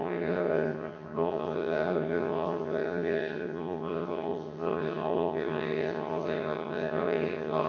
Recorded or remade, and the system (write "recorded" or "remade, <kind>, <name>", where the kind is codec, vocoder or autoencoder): remade, vocoder, HiFi-GAN